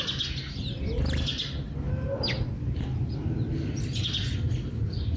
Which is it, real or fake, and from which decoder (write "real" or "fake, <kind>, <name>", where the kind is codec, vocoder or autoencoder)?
real